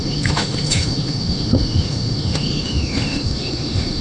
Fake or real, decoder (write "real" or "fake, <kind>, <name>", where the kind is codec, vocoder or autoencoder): fake, autoencoder, DAC-VAE